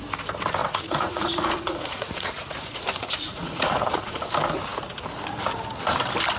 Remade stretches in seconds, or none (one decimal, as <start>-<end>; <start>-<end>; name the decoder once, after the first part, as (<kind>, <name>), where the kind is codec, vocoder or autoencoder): 0.6-4.3 (vocoder, Vocos)